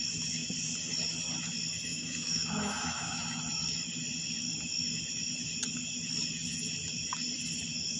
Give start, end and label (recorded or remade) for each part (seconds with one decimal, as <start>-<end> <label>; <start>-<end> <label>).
0.0-1.9 recorded; 1.9-3.4 remade; 3.4-8.0 recorded